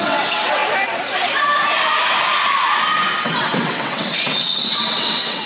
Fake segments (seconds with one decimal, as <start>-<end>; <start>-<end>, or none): 0.0-0.6; 3.2-5.5